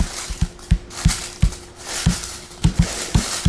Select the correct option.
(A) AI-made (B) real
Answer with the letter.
B